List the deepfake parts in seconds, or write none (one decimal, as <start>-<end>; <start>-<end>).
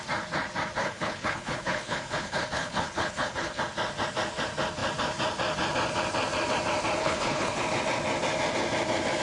0.8-3.6; 7.0-7.6